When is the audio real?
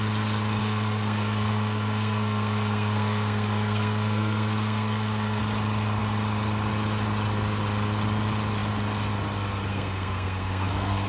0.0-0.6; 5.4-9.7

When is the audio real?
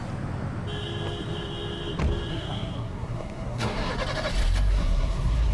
0.0-2.3; 3.9-4.7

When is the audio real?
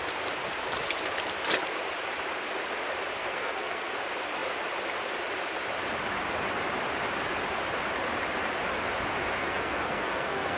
0.0-3.2; 3.9-9.4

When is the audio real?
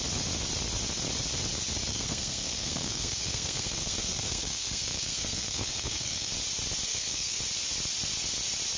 0.0-1.9; 6.3-6.9; 7.4-8.8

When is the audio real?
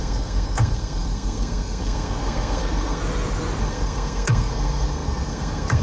3.0-3.6